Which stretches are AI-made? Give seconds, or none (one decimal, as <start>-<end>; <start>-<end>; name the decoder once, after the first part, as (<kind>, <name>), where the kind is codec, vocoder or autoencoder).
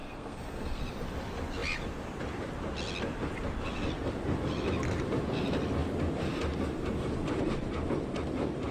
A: 0.0-0.8 (codec, SNAC)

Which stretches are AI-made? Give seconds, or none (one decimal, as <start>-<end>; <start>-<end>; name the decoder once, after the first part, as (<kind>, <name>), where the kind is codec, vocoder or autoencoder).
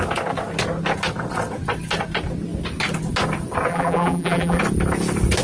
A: 3.7-4.6 (vocoder, BigVGAN v2)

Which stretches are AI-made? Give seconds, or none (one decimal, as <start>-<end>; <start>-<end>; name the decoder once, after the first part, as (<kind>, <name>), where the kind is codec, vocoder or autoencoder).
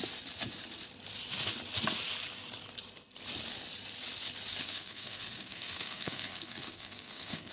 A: 4.6-7.5 (codec, SNAC)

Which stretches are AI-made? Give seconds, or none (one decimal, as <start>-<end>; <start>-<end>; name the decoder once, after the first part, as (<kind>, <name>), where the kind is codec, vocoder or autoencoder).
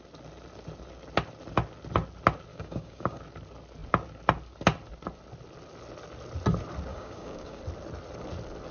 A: 2.5-3.2 (codec, DAC); 6.9-7.6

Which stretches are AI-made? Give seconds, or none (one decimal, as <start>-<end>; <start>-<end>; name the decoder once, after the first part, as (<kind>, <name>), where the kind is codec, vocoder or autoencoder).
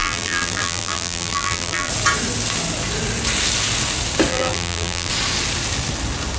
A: 0.0-1.9 (vocoder, BigVGAN v2); 4.3-5.1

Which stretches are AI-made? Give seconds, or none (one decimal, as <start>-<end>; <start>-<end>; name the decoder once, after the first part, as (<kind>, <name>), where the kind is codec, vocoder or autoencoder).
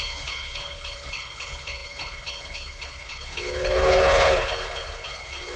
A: 0.0-5.6 (codec, HILCodec)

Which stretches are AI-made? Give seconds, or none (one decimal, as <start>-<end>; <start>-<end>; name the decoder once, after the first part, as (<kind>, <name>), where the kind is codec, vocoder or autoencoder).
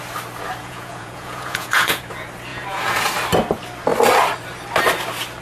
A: 0.6-2.0 (vocoder, Vocos); 2.5-3.1